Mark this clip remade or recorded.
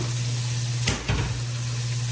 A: recorded